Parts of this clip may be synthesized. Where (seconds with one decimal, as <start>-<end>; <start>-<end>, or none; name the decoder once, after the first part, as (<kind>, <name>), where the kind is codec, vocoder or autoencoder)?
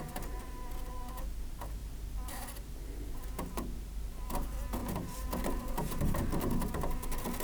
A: none